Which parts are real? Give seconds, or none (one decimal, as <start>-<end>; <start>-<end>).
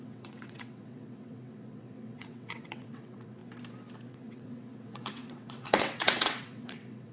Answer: 3.4-4.1